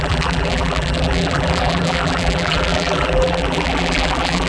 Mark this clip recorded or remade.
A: remade